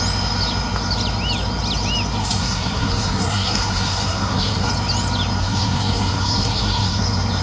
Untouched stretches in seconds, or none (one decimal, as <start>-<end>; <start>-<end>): 0.0-2.2; 4.7-5.4; 7.0-7.4